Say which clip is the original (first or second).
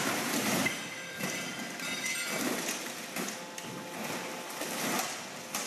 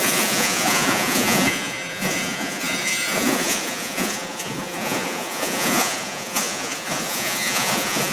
first